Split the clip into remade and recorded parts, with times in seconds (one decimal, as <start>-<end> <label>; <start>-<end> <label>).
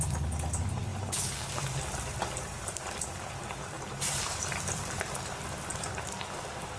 0.0-0.9 recorded; 0.9-5.0 remade; 5.0-5.7 recorded; 5.7-6.8 remade